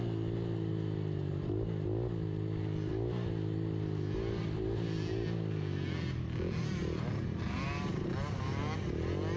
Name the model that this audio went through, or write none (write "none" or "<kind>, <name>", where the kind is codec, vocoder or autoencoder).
none